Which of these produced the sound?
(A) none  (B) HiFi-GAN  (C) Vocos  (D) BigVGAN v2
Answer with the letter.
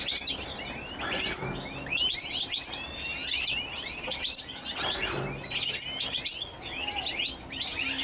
A